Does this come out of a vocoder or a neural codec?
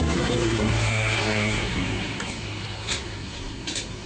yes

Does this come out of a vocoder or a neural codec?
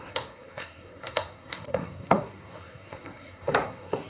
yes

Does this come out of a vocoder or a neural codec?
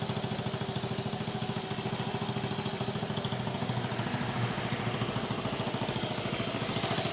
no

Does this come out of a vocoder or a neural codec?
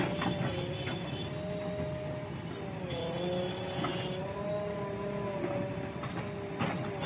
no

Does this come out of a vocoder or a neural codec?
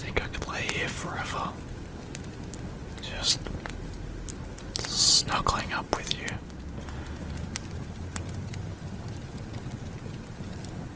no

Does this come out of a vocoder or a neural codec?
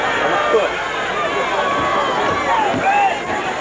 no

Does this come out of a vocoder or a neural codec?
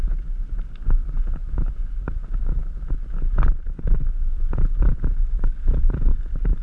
no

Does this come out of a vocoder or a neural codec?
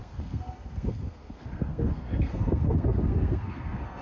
yes